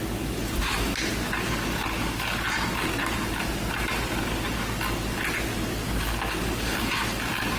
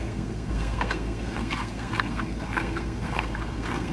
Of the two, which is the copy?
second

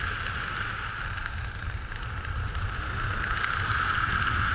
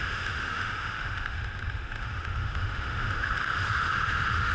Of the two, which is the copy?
second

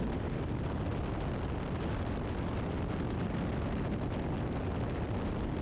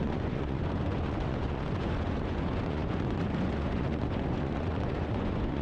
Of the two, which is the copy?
second